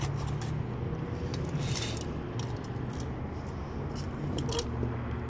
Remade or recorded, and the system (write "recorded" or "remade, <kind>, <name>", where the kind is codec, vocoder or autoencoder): recorded